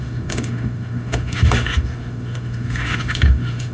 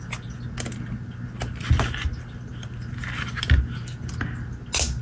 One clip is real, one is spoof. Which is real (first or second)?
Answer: second